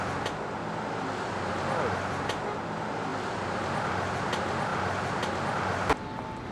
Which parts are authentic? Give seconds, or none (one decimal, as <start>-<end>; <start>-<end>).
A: 0.0-3.1; 4.1-4.7; 5.3-6.5